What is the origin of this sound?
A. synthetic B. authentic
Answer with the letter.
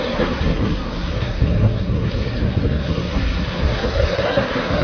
A